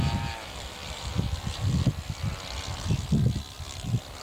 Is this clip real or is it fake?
real